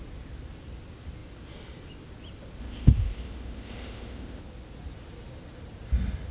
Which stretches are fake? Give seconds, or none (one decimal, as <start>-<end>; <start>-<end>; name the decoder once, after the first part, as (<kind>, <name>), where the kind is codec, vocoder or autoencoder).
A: 2.6-4.4 (codec, ZipCodec)